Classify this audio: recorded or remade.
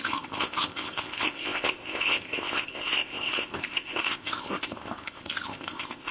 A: remade